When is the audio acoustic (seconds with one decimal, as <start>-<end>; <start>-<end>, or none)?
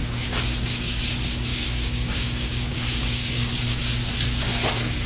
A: 1.0-1.5; 3.5-5.1